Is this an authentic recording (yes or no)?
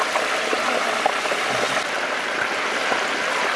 yes